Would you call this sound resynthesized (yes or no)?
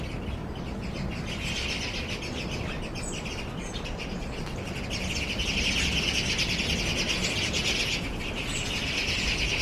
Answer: no